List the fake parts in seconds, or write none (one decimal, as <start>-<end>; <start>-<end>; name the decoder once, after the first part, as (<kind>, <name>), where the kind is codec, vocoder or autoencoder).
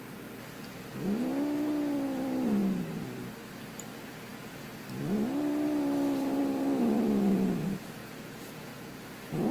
8.0-9.0 (vocoder, Vocos)